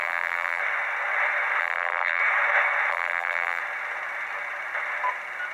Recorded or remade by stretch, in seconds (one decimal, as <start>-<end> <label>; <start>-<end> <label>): 0.0-0.6 remade; 0.6-1.6 recorded; 1.6-2.2 remade; 2.2-2.9 recorded; 2.9-3.6 remade; 3.6-5.5 recorded